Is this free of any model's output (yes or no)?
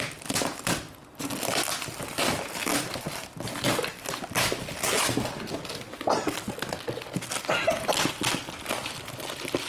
yes